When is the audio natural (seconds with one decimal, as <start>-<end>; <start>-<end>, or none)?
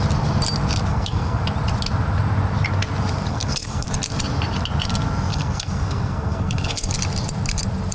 0.0-0.9; 1.4-3.3; 3.9-5.3; 6.9-7.9